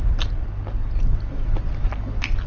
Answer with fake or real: real